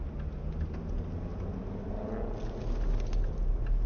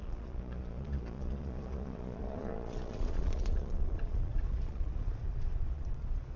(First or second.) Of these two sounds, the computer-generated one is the second